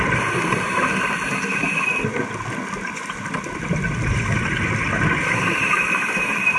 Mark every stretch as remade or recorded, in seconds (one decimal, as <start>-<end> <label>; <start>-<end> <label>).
0.0-6.6 recorded